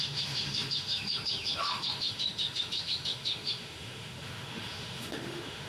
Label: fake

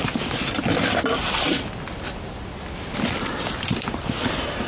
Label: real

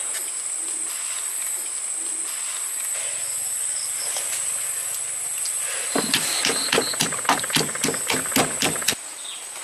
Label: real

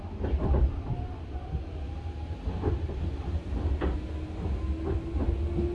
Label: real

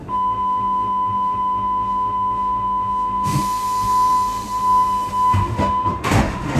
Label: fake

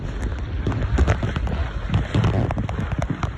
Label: real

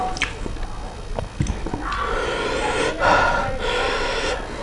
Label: real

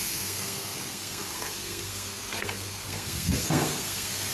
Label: fake